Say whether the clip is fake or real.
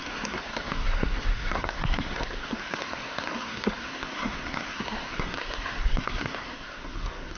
fake